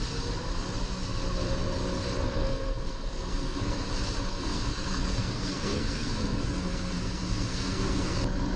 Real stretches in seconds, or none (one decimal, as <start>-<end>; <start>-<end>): 0.0-2.4; 3.9-4.3; 8.2-8.6